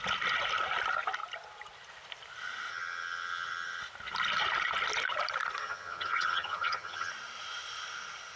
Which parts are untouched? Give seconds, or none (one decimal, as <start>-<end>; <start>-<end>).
0.0-2.7; 3.8-5.6; 7.1-8.4